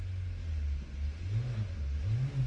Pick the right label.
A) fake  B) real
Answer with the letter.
B